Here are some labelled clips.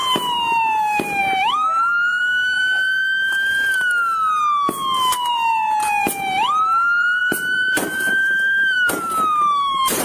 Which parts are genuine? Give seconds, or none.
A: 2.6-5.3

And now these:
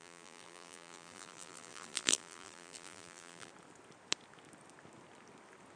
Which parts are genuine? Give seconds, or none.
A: 3.5-5.8

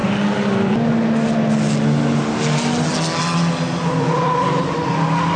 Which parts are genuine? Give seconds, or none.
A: 0.0-5.4